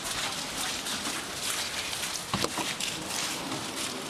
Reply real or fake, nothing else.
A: real